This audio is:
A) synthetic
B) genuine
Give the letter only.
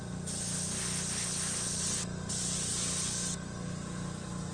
B